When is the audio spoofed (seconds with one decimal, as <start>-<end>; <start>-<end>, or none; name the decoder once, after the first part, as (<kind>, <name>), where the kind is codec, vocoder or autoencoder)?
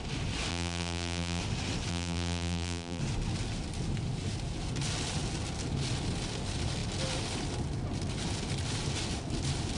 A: 0.5-1.4 (vocoder, BigVGAN v2); 1.9-3.0